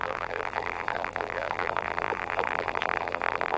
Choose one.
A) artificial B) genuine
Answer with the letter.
A